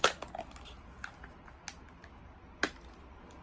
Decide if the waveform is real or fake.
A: real